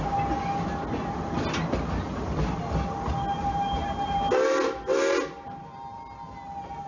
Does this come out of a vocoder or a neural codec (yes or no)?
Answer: no